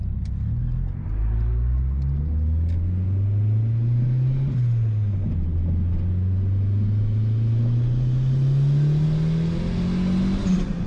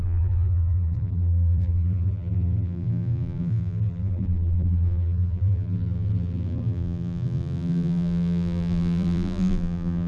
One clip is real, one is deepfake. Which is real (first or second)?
first